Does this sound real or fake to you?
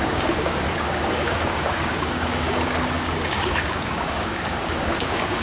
fake